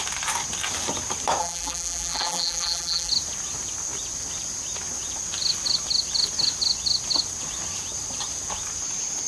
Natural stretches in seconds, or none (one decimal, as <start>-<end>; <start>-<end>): 0.0-1.4; 3.1-9.3